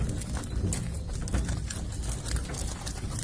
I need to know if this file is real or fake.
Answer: real